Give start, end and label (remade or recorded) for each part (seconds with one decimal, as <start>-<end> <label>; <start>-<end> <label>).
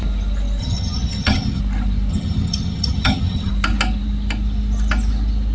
0.0-0.6 recorded; 0.6-1.6 remade; 1.6-2.1 recorded; 2.1-3.5 remade; 3.5-5.5 recorded